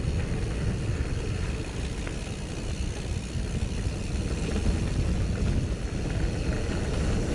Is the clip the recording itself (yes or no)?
yes